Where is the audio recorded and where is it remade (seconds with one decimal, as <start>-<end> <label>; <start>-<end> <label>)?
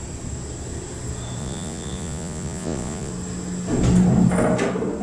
0.0-1.4 recorded; 1.4-3.1 remade; 3.1-5.0 recorded